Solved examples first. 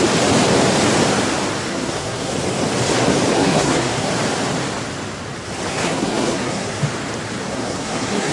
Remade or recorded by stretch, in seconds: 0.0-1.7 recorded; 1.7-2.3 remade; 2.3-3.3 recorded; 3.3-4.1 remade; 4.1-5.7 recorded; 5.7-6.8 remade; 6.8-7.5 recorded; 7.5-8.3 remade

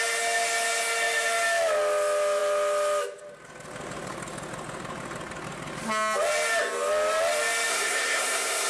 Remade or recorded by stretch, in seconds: 0.0-7.7 recorded; 7.7-8.7 remade

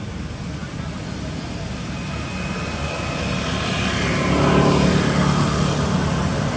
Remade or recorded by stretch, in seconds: 0.0-6.6 recorded

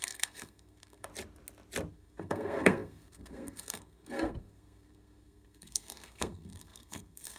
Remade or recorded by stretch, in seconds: 0.0-1.1 remade; 1.1-1.9 recorded; 1.9-7.4 remade

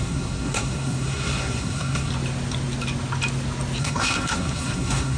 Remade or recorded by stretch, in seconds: 0.0-2.1 remade; 2.1-3.8 recorded; 3.8-5.2 remade

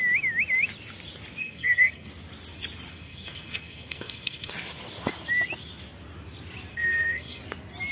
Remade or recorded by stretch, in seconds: 0.0-1.4 recorded; 1.4-2.1 remade; 2.1-2.9 recorded; 2.9-4.5 remade; 4.5-6.7 recorded; 6.7-7.4 remade; 7.4-7.9 recorded